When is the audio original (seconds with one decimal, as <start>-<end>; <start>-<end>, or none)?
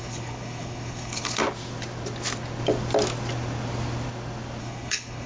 1.4-4.6